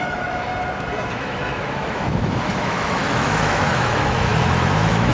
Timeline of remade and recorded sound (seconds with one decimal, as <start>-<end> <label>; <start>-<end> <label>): 0.0-0.5 remade; 0.5-1.1 recorded; 1.1-5.1 remade